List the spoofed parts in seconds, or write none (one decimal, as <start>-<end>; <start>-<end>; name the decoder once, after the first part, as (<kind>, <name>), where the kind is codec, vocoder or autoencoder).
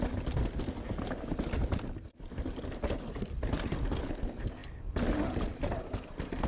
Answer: 4.6-5.2 (vocoder, BigVGAN v2)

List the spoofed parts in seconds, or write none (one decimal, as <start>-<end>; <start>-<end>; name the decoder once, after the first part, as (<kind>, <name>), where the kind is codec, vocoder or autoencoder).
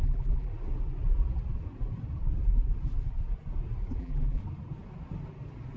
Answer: 0.0-0.5 (vocoder, BigVGAN v2); 4.0-4.4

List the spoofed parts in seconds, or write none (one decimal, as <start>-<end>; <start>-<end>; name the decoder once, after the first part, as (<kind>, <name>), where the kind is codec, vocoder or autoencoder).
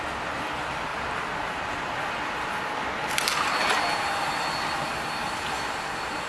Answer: 5.2-6.3 (vocoder, BigVGAN v2)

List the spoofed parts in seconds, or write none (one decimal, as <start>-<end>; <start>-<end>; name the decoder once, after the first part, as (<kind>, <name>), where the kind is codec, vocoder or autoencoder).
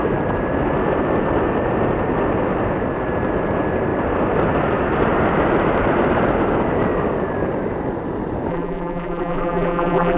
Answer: 8.5-10.2 (vocoder, BigVGAN v2)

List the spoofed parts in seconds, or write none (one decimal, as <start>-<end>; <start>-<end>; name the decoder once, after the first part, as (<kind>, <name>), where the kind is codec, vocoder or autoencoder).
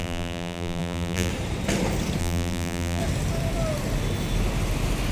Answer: 0.0-1.3 (vocoder, BigVGAN v2); 2.2-3.0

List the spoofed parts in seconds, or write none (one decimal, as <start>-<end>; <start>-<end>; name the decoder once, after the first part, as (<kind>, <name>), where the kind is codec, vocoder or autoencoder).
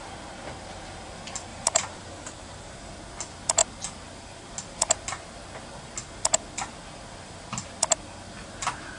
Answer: 1.5-2.9 (vocoder, BigVGAN v2)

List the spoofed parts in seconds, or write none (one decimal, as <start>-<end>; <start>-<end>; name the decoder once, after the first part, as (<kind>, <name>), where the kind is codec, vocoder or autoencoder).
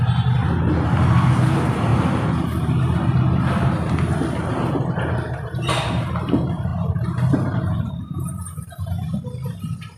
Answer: 0.0-0.4 (vocoder, BigVGAN v2); 1.4-1.9; 4.6-10.0